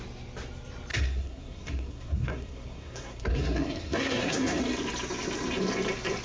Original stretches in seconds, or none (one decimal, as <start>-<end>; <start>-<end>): 0.0-0.9; 4.6-6.2